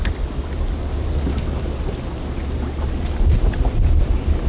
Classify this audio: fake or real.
real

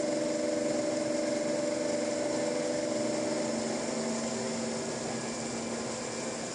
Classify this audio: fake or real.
real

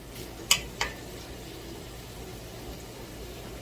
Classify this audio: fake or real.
real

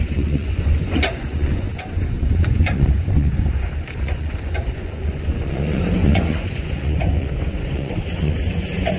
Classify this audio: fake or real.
fake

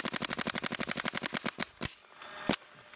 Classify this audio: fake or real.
real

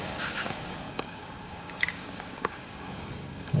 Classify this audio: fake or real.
fake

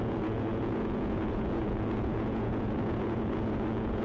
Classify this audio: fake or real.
fake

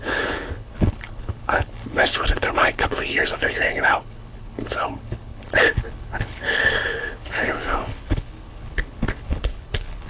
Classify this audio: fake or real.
fake